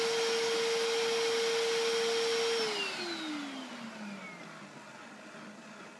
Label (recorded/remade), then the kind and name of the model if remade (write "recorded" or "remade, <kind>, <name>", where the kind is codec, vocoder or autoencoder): recorded